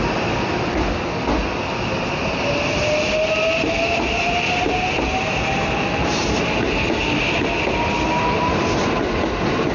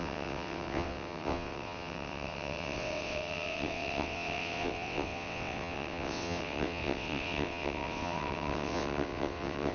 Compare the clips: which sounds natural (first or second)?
first